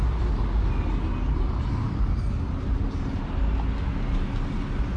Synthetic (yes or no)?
no